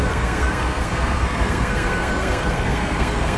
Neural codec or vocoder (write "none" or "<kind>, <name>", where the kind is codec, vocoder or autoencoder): codec, SNAC